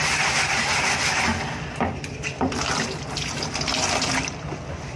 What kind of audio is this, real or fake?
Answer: real